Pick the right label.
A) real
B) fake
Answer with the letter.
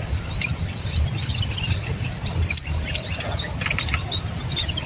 A